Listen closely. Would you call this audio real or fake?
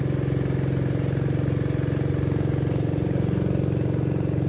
real